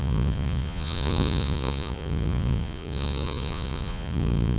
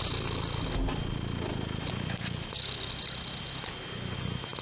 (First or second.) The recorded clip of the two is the second